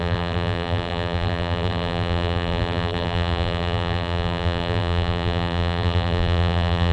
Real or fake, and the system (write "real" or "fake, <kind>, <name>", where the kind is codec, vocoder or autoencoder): fake, vocoder, BigVGAN v2